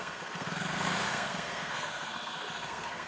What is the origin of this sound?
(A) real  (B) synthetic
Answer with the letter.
B